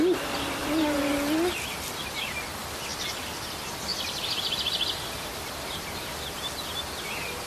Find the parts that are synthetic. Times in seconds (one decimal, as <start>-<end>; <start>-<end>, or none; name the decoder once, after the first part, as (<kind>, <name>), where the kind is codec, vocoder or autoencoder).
none